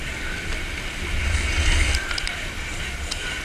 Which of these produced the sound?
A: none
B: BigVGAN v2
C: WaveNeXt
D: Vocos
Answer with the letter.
A